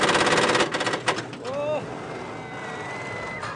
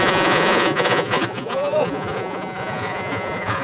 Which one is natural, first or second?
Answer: first